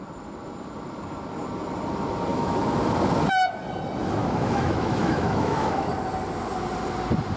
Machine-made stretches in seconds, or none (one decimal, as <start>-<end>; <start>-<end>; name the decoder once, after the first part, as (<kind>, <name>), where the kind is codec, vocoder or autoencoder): 2.3-2.8 (autoencoder, DAC-VAE); 4.2-5.9